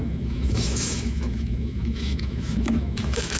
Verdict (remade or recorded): remade